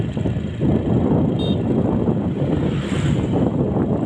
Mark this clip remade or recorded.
recorded